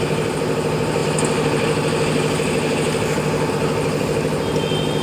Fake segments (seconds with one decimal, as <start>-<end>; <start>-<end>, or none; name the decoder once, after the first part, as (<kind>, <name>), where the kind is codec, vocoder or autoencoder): none